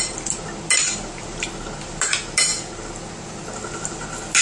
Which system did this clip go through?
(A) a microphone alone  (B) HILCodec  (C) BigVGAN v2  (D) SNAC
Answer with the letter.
A